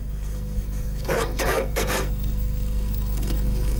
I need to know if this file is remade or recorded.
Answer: remade